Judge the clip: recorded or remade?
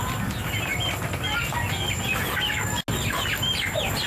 recorded